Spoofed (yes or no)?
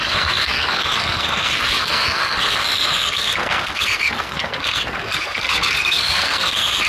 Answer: yes